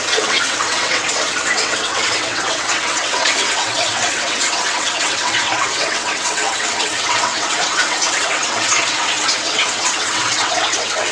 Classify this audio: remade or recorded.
remade